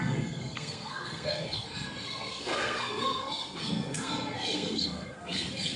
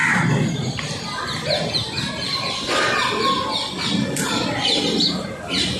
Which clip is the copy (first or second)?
first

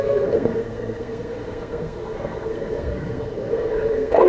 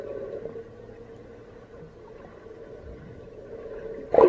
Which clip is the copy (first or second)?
first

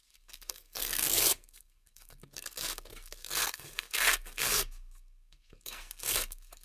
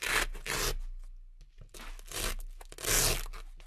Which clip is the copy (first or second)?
first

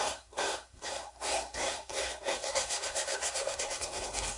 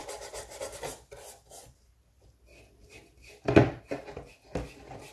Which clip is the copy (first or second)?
first